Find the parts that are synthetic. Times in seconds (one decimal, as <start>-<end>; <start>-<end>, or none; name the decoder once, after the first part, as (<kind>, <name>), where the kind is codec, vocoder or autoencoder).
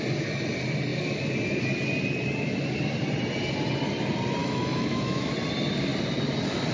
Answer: 4.4-5.3 (autoencoder, DAC-VAE)